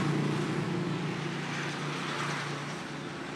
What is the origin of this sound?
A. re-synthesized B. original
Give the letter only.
B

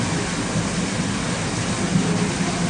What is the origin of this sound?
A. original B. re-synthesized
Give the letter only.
A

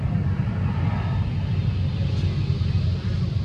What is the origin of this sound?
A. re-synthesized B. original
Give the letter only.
B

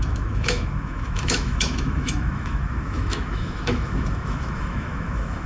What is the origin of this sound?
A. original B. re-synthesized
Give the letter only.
B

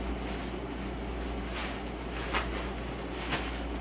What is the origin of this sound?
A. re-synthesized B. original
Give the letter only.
B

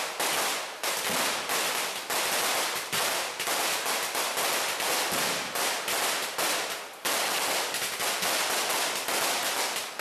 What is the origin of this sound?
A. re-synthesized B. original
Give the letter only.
B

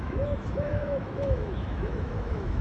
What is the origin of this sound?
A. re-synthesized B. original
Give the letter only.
A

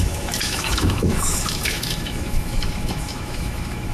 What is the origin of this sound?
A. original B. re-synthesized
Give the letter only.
B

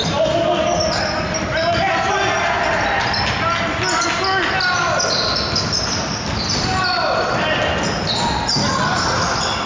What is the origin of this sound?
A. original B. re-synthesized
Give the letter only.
A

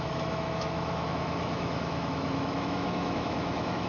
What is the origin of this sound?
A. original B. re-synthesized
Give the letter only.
B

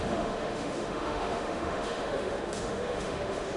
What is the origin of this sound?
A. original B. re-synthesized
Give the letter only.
B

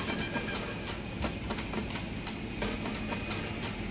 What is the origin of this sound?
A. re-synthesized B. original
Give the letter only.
B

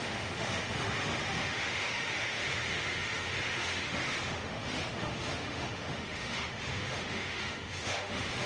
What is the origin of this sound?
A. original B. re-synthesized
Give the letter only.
B